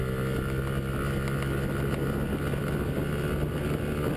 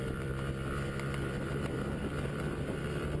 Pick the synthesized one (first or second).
second